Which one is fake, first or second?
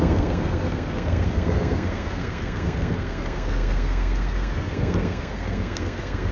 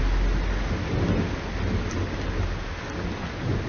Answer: first